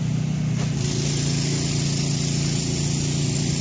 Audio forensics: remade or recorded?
recorded